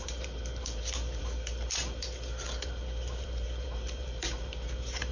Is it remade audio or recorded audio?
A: remade